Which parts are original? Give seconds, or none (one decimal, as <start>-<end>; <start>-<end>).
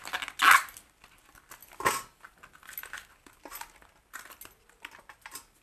0.0-5.6